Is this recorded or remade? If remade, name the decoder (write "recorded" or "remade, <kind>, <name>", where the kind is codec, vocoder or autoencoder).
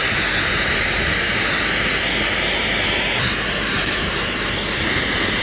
recorded